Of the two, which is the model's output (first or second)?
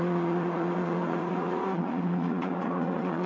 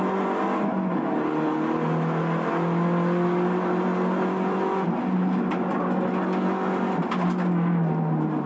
first